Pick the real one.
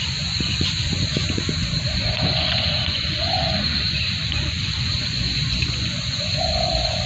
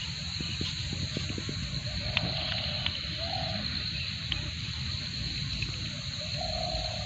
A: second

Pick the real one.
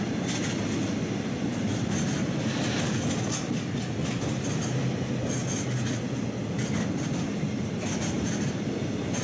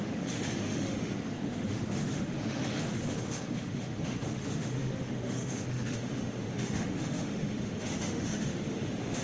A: first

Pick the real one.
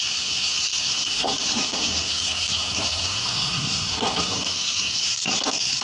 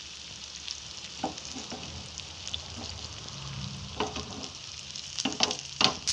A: second